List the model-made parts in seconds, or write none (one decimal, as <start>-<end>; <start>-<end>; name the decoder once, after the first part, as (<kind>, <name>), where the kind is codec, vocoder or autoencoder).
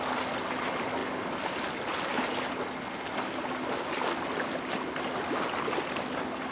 none